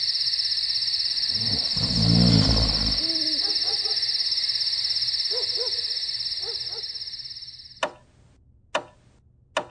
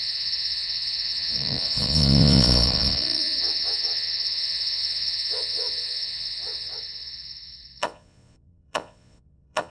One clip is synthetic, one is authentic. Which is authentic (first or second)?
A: first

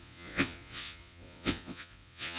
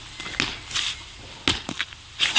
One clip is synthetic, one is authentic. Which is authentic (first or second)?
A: second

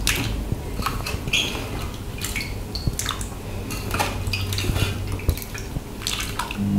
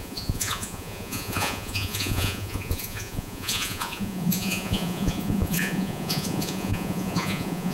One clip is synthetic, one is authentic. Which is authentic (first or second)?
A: first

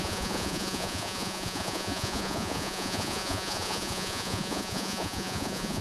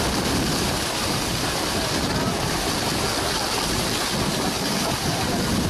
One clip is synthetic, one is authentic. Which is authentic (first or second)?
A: second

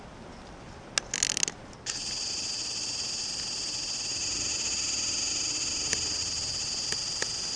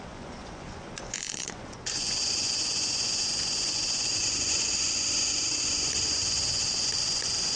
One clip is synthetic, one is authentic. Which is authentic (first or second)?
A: first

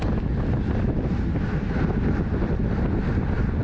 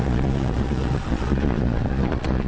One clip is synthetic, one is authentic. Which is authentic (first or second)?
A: first